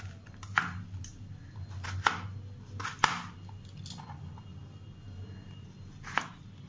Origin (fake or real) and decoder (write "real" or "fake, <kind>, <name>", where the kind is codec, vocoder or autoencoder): real